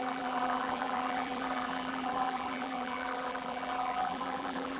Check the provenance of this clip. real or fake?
fake